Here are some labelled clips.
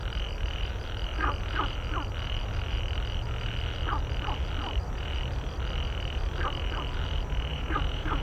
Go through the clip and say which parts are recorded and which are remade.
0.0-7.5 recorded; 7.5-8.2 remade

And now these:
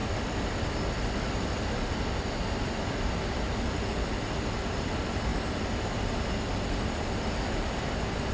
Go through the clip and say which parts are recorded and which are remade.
0.0-8.3 recorded

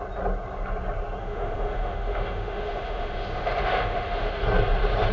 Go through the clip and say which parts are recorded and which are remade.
0.0-1.2 recorded; 1.2-4.3 remade; 4.3-5.1 recorded

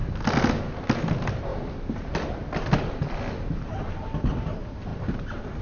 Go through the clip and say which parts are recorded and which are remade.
0.0-1.5 recorded; 1.5-3.7 remade; 3.7-5.6 recorded